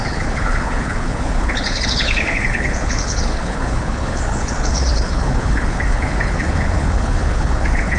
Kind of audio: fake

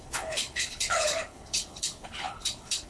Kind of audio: fake